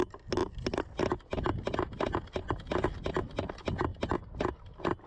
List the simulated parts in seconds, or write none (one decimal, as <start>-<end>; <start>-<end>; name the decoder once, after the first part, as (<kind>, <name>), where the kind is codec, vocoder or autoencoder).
none